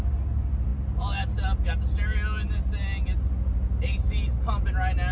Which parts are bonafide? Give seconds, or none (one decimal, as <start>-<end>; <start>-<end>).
0.0-5.1